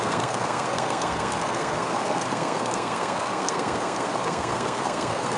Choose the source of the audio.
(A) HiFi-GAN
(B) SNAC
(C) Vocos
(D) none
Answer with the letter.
B